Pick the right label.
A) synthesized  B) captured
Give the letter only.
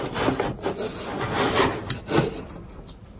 B